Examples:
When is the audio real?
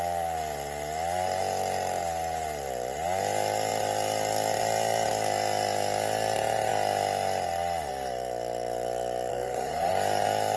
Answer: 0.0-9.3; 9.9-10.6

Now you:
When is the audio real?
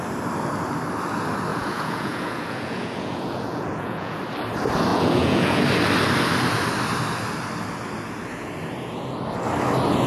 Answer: 0.0-1.5; 4.2-4.9; 5.6-10.1